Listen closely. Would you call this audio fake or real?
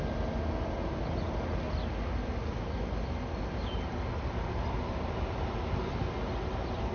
real